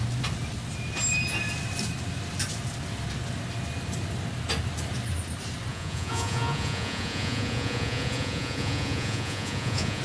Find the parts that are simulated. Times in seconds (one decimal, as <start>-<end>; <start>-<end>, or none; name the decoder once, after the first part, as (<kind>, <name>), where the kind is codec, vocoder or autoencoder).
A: 5.7-10.0 (vocoder, Vocos)